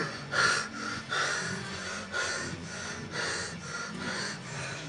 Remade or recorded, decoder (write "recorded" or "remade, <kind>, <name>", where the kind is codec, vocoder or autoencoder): remade, vocoder, Vocos